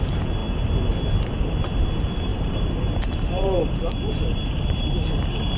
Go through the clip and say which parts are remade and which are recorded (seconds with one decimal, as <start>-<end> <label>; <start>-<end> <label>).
0.0-0.4 remade; 0.4-1.8 recorded; 1.8-3.8 remade; 3.8-4.5 recorded; 4.5-5.6 remade